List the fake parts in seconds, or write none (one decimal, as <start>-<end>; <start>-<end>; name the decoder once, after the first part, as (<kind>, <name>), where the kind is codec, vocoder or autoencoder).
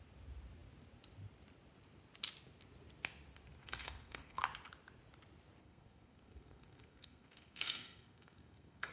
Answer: 3.6-4.4 (codec, SNAC); 5.6-8.9